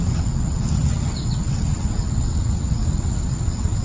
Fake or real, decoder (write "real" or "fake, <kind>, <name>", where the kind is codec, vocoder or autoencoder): fake, vocoder, WaveNeXt